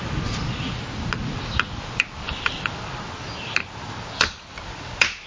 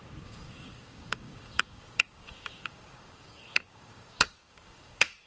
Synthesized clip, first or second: second